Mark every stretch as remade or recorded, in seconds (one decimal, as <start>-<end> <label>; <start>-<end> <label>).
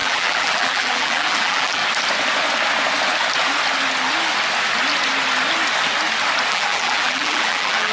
0.0-1.8 remade; 1.8-6.5 recorded; 6.5-7.9 remade